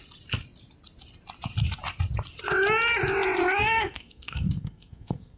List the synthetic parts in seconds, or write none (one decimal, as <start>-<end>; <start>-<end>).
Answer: 3.6-5.4